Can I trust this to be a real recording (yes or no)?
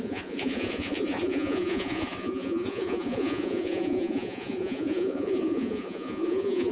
no